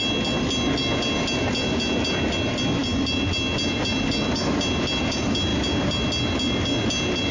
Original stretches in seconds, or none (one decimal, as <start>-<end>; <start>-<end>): 0.0-7.3